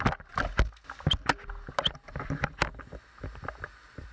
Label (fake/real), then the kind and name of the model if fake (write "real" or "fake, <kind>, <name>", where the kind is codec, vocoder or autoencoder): real